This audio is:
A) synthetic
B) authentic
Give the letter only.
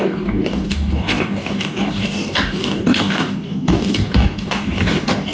A